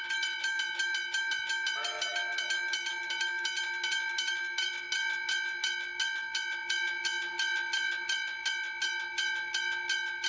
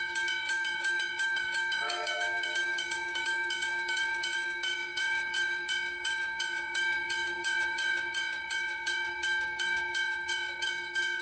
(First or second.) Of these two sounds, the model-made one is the second